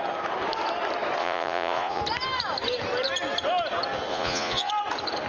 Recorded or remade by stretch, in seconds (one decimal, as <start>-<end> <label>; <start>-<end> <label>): 0.0-1.2 recorded; 1.2-2.0 remade; 2.0-4.1 recorded; 4.1-4.7 remade; 4.7-5.3 recorded